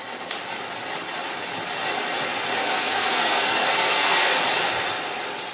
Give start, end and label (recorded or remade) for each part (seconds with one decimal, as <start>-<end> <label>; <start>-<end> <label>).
0.0-2.6 recorded; 2.6-4.3 remade; 4.3-5.5 recorded